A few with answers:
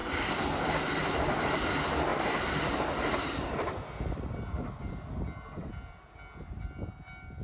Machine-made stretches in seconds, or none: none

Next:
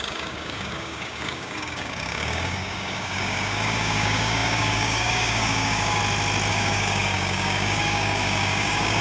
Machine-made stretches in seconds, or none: 0.0-6.0 (codec, DAC); 6.5-9.0

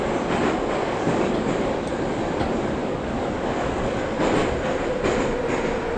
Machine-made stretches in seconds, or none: 0.8-1.3 (codec, DAC); 2.8-4.0

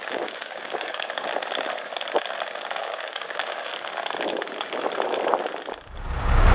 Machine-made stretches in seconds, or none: 0.0-1.3 (codec, DAC); 2.8-3.7; 6.1-6.5

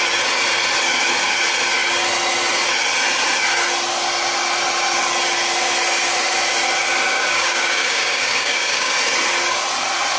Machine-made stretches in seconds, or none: 7.1-8.9 (codec, DAC)

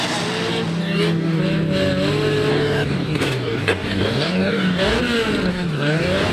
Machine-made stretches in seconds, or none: 0.8-1.4 (codec, DAC); 2.5-5.0; 5.5-6.3

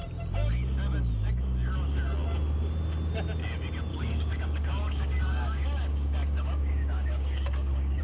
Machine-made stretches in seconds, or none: 3.9-8.0 (codec, DAC)